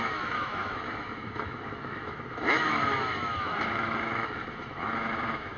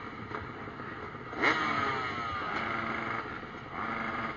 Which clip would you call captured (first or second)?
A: second